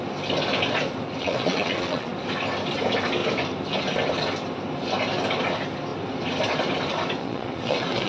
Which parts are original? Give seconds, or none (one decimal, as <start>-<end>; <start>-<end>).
0.0-1.2; 2.1-7.2

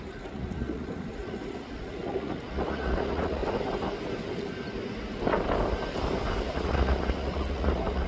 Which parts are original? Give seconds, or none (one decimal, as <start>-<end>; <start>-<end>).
3.4-6.4

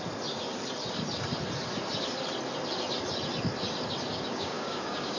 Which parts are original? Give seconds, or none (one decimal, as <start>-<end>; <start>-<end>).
0.0-4.3

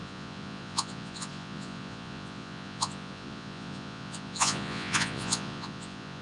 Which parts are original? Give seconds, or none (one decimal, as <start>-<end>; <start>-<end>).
none

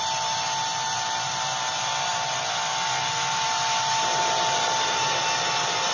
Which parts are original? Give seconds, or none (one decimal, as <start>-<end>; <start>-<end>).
0.0-5.9

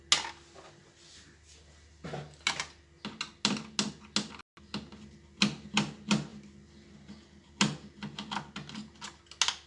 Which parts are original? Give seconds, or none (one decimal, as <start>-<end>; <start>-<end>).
0.0-9.7